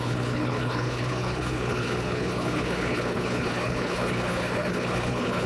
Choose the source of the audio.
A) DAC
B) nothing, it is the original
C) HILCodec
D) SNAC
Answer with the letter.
C